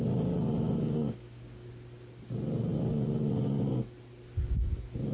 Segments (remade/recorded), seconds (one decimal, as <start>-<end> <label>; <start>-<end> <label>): 0.0-1.0 recorded; 1.0-1.7 remade; 1.7-5.1 recorded